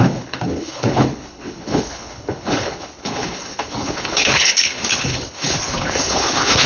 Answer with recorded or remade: remade